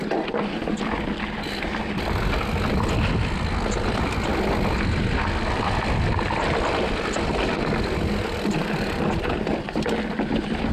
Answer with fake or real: real